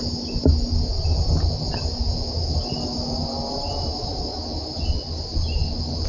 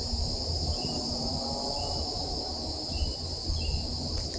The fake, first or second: second